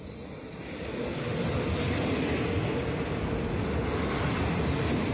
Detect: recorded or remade recorded